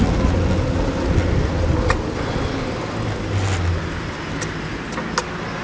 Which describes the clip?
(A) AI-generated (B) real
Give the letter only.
B